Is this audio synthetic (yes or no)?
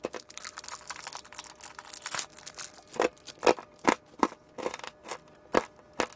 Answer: no